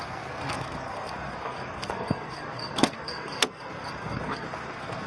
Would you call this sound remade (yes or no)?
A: yes